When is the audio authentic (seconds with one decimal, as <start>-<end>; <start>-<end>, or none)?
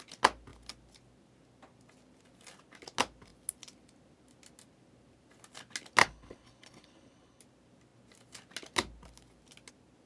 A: 0.0-6.0; 7.4-10.1